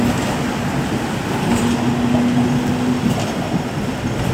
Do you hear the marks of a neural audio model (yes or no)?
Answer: no